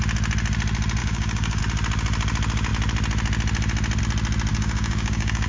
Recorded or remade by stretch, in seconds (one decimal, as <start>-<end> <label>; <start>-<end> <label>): 0.0-1.0 recorded; 1.0-1.6 remade; 1.6-4.5 recorded; 4.5-5.5 remade